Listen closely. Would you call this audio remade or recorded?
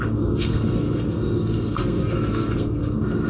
remade